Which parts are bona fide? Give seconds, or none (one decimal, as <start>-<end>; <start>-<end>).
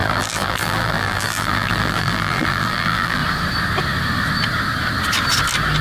3.2-5.8